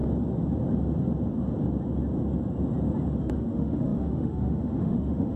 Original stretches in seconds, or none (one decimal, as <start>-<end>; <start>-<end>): 0.0-3.2

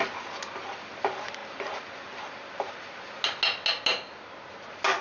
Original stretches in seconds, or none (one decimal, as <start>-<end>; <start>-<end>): 0.0-5.0